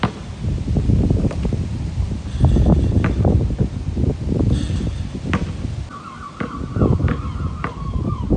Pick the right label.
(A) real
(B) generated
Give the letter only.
A